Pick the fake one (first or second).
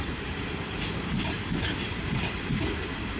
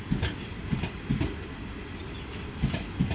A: first